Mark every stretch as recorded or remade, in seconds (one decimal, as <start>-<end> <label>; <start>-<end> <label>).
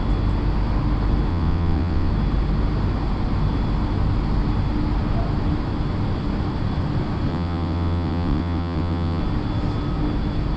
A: 0.0-1.3 recorded; 1.3-2.1 remade; 2.1-7.3 recorded; 7.3-9.2 remade; 9.2-10.6 recorded